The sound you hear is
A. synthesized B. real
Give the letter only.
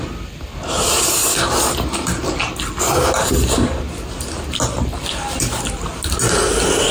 B